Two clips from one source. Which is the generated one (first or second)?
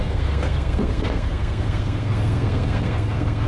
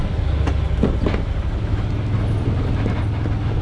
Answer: first